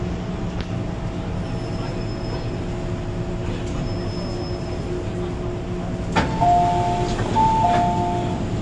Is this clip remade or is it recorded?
recorded